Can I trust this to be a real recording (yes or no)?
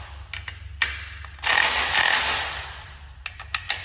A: yes